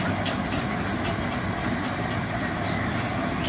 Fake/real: real